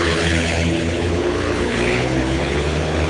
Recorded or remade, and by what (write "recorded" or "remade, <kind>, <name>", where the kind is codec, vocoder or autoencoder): remade, codec, HILCodec